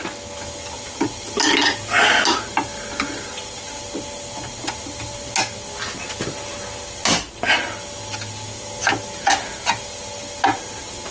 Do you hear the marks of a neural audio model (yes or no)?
no